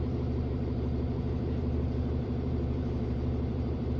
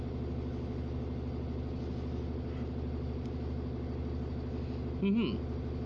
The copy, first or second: first